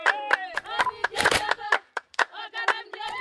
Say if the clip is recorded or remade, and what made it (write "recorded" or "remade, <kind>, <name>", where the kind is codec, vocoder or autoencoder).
remade, vocoder, BigVGAN v2